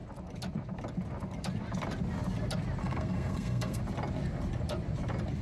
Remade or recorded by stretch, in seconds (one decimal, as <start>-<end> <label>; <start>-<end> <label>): 0.0-2.8 recorded; 2.8-3.8 remade; 3.8-5.4 recorded